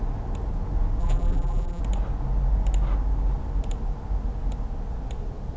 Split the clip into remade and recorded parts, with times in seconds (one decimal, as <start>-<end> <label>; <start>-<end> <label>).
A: 0.0-1.0 recorded; 1.0-1.8 remade; 1.8-5.6 recorded